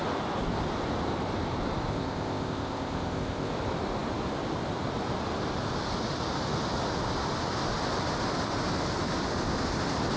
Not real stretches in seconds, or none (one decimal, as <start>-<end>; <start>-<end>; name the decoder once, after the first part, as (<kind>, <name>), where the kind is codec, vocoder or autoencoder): 1.9-3.5 (codec, ZipCodec)